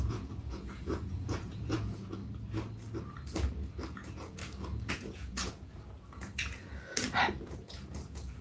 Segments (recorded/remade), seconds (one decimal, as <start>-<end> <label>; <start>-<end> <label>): 0.0-2.2 remade; 2.2-3.9 recorded; 3.9-4.4 remade; 4.4-4.9 recorded; 4.9-6.6 remade; 6.6-7.3 recorded; 7.3-8.4 remade

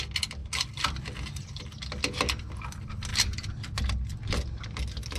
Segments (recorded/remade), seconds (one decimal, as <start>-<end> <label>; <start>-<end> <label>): 0.0-0.4 recorded; 0.4-1.6 remade; 1.6-3.1 recorded; 3.1-4.2 remade; 4.2-5.2 recorded